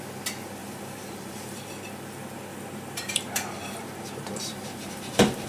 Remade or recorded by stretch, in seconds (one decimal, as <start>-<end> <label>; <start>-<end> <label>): 0.0-0.6 recorded; 0.6-1.7 remade; 1.7-2.5 recorded; 2.5-5.5 remade